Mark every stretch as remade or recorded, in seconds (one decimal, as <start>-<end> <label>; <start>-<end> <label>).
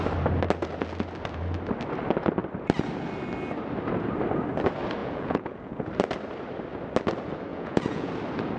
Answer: 0.0-5.0 recorded; 5.0-5.9 remade; 5.9-7.5 recorded; 7.5-8.1 remade; 8.1-8.6 recorded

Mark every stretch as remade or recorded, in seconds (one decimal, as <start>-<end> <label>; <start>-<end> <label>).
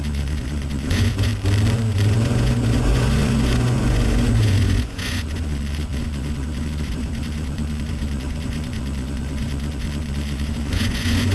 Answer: 0.0-1.3 remade; 1.3-1.9 recorded; 1.9-11.3 remade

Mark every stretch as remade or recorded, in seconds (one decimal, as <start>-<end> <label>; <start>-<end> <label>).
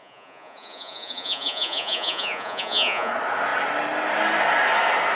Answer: 0.0-3.1 remade; 3.1-5.2 recorded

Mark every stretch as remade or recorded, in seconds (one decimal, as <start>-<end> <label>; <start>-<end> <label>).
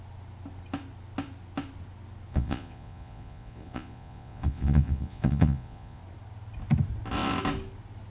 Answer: 0.0-2.3 recorded; 2.3-6.0 remade; 6.0-8.1 recorded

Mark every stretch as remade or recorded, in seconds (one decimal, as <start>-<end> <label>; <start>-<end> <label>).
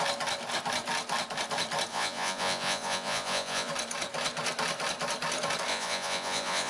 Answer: 0.0-1.9 recorded; 1.9-3.7 remade; 3.7-5.7 recorded; 5.7-6.7 remade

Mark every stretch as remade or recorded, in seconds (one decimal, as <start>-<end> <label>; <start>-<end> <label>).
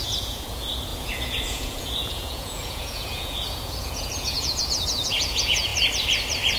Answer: 0.0-5.7 remade; 5.7-6.6 recorded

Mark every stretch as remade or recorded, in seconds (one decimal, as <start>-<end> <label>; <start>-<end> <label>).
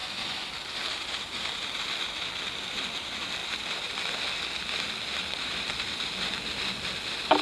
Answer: 0.0-0.5 remade; 0.5-7.4 recorded